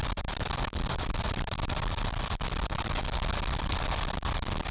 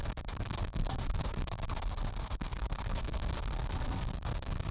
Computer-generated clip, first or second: second